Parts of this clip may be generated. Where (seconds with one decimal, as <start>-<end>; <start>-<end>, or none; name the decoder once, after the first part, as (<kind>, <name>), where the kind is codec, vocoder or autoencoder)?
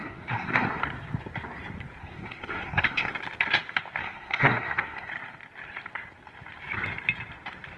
0.0-0.8 (codec, SNAC); 2.0-3.1; 4.0-5.1